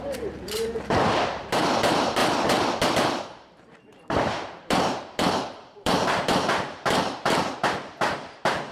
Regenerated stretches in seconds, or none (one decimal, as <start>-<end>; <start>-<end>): 0.0-2.2; 2.9-8.7